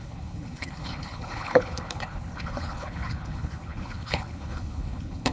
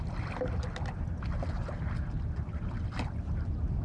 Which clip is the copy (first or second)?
first